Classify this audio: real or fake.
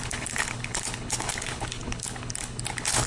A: fake